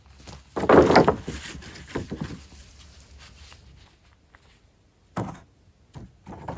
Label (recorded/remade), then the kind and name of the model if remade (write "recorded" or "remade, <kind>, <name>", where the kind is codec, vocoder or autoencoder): recorded